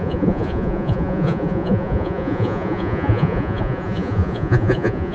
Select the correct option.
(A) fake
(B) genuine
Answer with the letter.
A